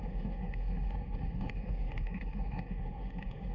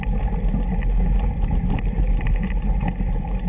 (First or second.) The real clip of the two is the second